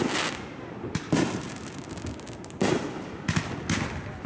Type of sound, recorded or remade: recorded